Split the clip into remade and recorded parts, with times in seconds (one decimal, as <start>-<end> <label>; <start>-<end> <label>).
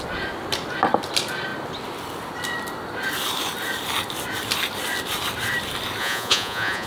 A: 0.0-6.0 recorded; 6.0-6.9 remade